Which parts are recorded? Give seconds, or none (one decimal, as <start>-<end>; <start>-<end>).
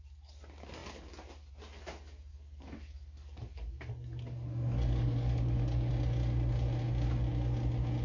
0.0-2.3; 5.9-8.0